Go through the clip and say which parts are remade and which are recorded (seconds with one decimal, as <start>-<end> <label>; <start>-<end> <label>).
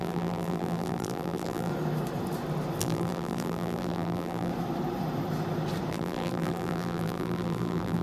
0.0-1.7 remade; 1.7-2.8 recorded; 2.8-4.5 remade; 4.5-5.9 recorded; 5.9-8.0 remade